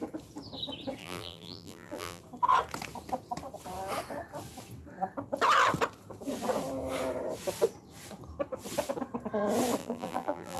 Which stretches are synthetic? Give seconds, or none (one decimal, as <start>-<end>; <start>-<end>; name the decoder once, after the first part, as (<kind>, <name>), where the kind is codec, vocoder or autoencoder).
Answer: 1.0-2.2 (vocoder, BigVGAN v2); 9.8-10.6